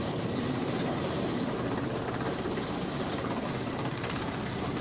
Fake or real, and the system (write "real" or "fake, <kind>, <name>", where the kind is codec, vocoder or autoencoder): fake, vocoder, BigVGAN v2